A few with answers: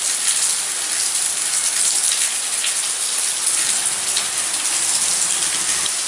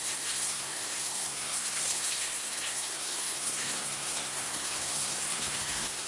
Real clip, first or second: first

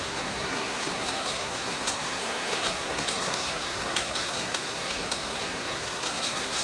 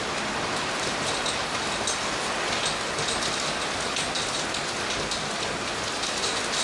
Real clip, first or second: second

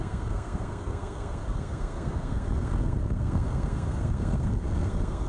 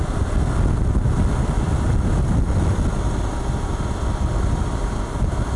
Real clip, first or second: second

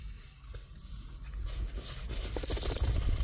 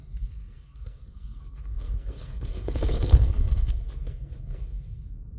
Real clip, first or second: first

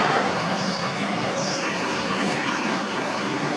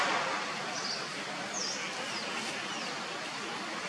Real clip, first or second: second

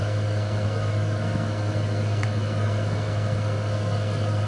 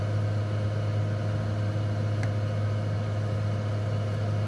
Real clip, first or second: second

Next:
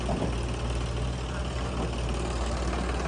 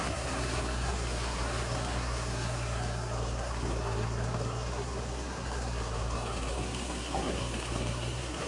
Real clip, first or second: first